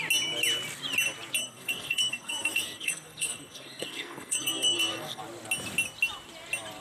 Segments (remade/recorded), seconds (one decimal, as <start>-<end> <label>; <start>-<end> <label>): 0.0-1.4 recorded; 1.4-5.2 remade; 5.2-6.8 recorded